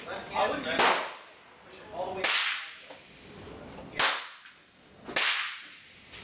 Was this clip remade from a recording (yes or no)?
no